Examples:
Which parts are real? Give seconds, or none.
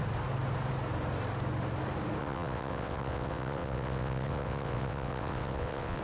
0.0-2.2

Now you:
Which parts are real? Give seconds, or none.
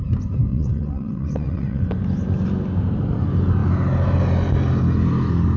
0.0-0.5; 1.8-5.6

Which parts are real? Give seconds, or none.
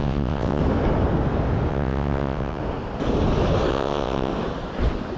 0.6-1.7; 2.6-3.7; 4.3-5.2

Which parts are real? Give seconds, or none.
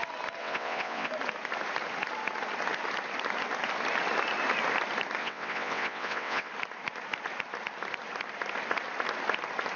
0.0-0.4; 1.1-5.2; 6.5-9.8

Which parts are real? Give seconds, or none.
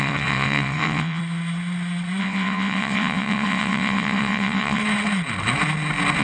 1.2-2.2; 4.8-6.2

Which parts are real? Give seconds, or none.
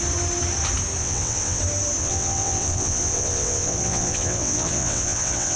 0.0-1.0; 1.6-2.0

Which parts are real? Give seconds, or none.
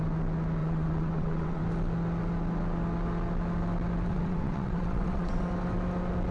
0.0-0.6; 1.6-4.1; 5.5-6.3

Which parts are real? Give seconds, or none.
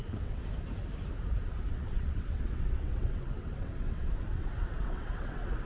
0.4-1.7